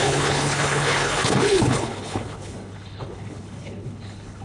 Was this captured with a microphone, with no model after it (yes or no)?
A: no